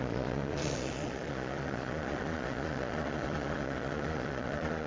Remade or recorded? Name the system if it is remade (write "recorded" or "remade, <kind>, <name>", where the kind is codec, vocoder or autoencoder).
remade, vocoder, Vocos